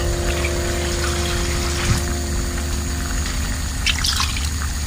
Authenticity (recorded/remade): recorded